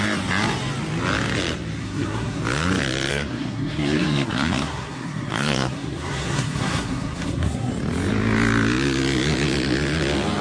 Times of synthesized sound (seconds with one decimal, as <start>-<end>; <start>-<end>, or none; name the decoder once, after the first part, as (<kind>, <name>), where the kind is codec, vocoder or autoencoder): 1.8-2.4 (codec, SNAC); 3.1-7.7